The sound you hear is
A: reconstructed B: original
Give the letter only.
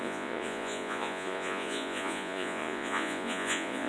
A